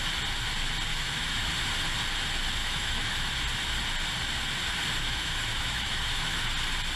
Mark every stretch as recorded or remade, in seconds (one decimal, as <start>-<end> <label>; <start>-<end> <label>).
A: 0.0-0.9 recorded; 0.9-1.5 remade; 1.5-2.6 recorded; 2.6-3.3 remade; 3.3-5.0 recorded; 5.0-6.5 remade; 6.5-7.0 recorded